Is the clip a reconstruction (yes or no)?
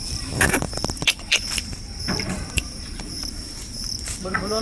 yes